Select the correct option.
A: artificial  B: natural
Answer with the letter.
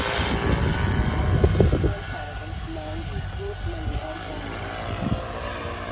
B